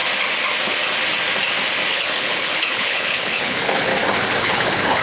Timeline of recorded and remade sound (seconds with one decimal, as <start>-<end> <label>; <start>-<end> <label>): 0.0-1.9 recorded; 1.9-3.9 remade; 3.9-4.4 recorded; 4.4-5.0 remade